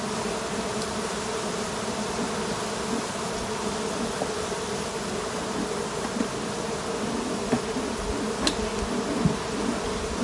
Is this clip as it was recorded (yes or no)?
yes